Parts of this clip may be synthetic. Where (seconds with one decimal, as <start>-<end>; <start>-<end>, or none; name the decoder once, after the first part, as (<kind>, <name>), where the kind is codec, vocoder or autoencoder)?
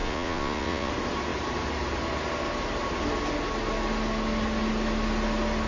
0.0-0.9 (vocoder, Vocos)